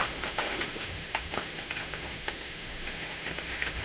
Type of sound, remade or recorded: remade